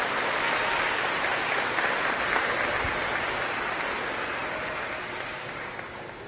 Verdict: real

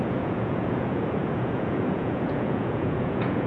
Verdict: fake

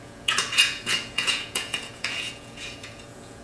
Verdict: fake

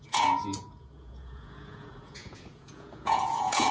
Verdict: fake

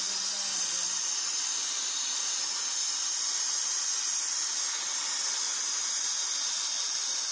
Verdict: real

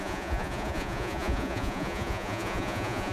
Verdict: fake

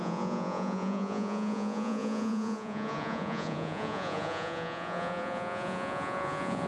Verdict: fake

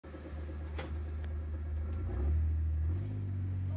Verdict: real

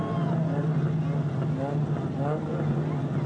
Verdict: real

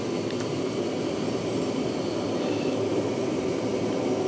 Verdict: real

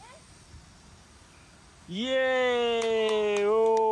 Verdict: real